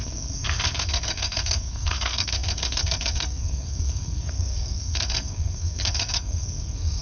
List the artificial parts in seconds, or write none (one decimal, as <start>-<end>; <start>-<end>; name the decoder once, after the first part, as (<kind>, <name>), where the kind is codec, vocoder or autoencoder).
0.0-7.0 (codec, SNAC)